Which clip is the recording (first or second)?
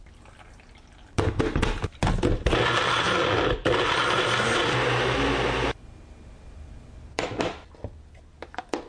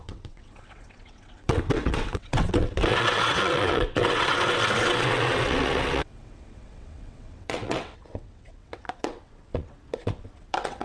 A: first